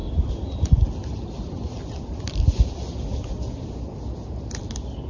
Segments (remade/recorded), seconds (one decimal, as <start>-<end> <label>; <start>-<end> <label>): 0.0-5.1 recorded

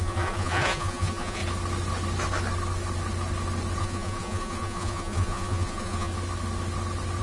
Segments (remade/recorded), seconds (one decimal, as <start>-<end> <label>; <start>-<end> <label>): 0.0-1.4 remade; 1.4-3.8 recorded; 3.8-6.1 remade; 6.1-7.2 recorded

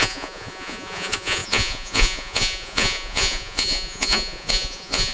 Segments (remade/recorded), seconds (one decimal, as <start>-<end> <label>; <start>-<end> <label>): 0.0-5.1 remade

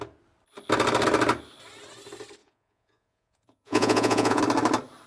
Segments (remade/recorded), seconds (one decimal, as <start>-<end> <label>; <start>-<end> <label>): 0.0-2.4 recorded; 2.4-4.4 remade; 4.4-5.1 recorded